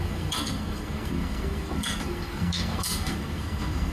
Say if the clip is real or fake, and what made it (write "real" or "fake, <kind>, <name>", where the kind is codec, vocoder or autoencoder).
fake, codec, SNAC